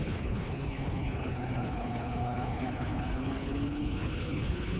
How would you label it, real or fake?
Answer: fake